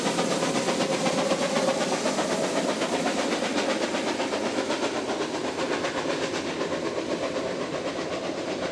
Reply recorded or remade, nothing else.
recorded